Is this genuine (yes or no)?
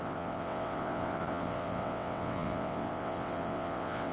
no